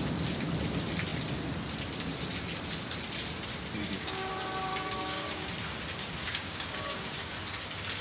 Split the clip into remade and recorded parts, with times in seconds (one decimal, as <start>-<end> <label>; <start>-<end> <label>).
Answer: 0.0-3.8 recorded; 3.8-4.3 remade; 4.3-4.7 recorded; 4.7-5.5 remade; 5.5-6.0 recorded; 6.0-7.3 remade; 7.3-8.0 recorded

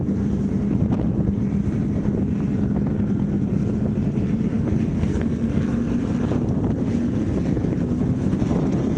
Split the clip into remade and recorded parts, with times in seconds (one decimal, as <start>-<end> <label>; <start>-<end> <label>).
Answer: 0.0-4.5 recorded; 4.5-5.6 remade; 5.6-9.0 recorded

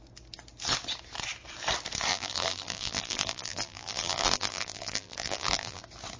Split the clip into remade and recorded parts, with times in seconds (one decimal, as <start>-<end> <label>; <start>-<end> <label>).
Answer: 0.0-2.1 recorded; 2.1-5.8 remade; 5.8-6.2 recorded